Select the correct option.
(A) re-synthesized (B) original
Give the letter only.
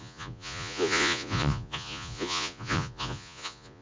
A